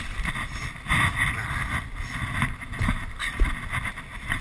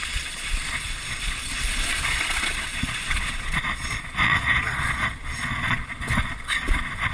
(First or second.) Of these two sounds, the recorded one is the first